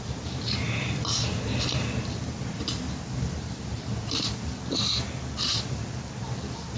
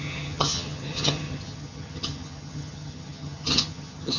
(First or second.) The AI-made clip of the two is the second